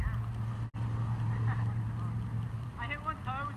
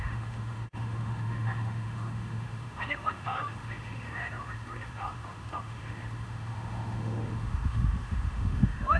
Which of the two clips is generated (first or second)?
second